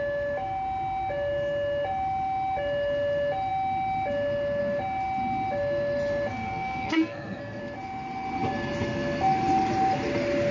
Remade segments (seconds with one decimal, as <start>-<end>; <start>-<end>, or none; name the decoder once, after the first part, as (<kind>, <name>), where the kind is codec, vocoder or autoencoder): 6.3-7.6 (codec, SNAC)